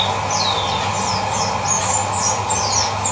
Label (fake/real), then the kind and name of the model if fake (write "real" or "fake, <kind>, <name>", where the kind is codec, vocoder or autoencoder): real